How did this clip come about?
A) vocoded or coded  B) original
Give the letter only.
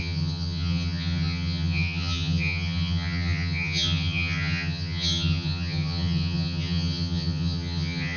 A